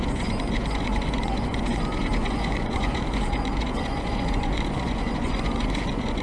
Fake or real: fake